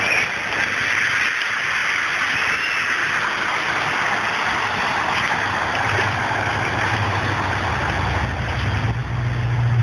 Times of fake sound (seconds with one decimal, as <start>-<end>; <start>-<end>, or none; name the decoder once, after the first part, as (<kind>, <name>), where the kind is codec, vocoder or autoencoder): 4.9-7.3 (vocoder, BigVGAN v2)